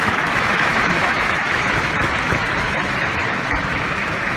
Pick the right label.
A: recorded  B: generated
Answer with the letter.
B